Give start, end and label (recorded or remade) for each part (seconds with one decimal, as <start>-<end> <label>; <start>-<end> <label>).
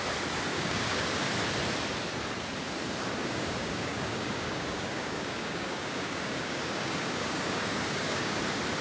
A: 0.0-0.5 recorded; 0.5-1.3 remade; 1.3-3.2 recorded; 3.2-8.4 remade; 8.4-8.8 recorded